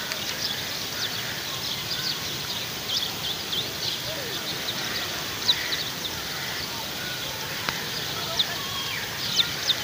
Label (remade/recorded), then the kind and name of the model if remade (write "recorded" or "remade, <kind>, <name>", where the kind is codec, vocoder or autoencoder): remade, vocoder, BigVGAN v2